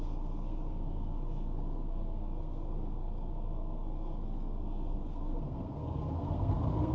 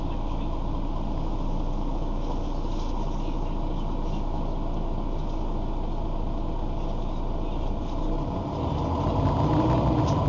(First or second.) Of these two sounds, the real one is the second